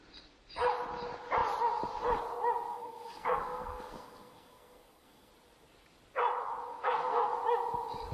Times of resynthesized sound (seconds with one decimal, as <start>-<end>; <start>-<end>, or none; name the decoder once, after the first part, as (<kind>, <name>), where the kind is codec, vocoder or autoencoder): 2.7-5.3 (codec, SNAC); 6.7-7.3